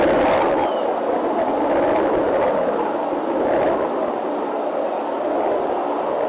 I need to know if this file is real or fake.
real